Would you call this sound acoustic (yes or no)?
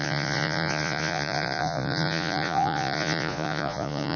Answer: no